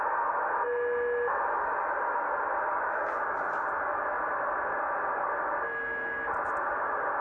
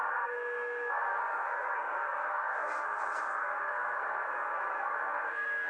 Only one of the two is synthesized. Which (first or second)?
second